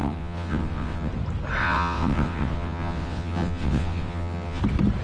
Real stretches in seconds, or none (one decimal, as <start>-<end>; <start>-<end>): 1.1-1.6; 4.6-5.0